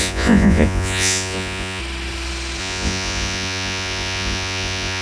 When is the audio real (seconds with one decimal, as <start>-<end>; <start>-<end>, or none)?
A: 1.8-2.6